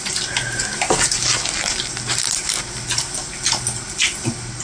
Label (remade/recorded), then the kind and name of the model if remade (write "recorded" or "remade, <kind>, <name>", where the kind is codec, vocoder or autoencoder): recorded